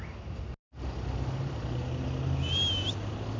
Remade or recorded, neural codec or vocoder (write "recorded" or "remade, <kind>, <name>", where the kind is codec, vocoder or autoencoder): recorded